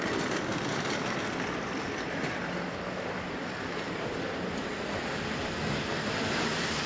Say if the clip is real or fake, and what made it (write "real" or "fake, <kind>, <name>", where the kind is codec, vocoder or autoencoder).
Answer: fake, vocoder, BigVGAN v2